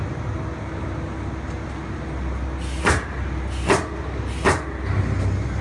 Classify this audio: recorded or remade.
recorded